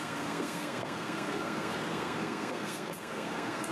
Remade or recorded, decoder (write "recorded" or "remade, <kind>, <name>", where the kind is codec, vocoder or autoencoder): remade, codec, SNAC